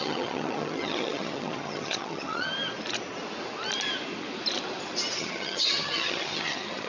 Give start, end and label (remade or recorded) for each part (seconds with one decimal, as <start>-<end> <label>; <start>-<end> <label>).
0.0-2.5 remade; 2.5-5.2 recorded; 5.2-6.9 remade